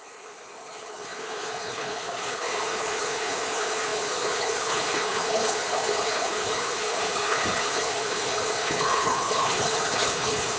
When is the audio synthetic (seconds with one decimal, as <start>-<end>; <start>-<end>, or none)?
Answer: 0.0-10.6